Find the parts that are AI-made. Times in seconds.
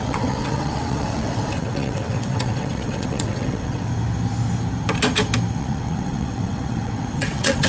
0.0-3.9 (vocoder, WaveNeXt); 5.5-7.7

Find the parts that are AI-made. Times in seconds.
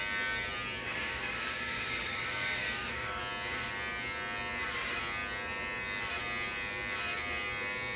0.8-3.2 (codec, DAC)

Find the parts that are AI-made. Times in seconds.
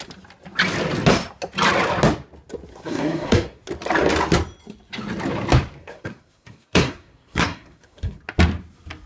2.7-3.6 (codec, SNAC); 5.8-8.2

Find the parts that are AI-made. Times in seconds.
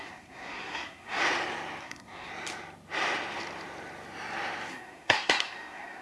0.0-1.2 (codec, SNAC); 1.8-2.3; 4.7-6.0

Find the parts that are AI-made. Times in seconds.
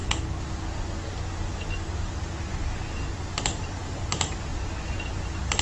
3.4-4.5 (vocoder, BigVGAN v2)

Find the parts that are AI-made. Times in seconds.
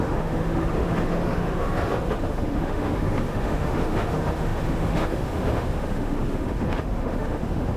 0.0-7.8 (autoencoder, DAC-VAE)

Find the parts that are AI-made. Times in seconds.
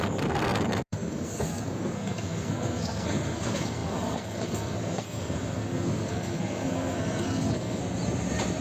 0.0-7.8 (codec, SNAC)